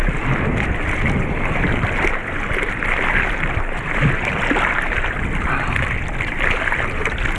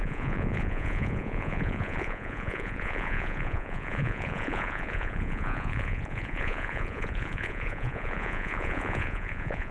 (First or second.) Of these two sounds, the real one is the first